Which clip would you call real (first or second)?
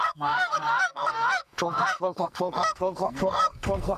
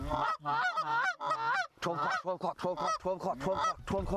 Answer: second